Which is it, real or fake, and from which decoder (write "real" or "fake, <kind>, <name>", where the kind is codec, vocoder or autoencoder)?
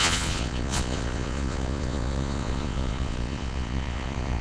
fake, vocoder, Vocos